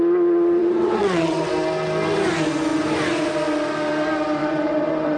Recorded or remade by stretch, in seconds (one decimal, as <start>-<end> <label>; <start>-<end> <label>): 0.0-0.6 recorded; 0.6-1.5 remade; 1.5-4.4 recorded; 4.4-5.2 remade